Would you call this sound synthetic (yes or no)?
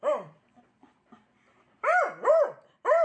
no